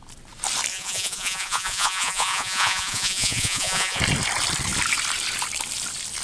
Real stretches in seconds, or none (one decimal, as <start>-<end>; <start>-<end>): 0.0-0.7; 4.0-6.2